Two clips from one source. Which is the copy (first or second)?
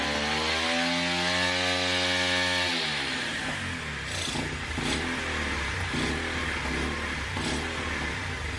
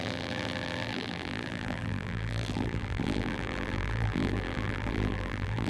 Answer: second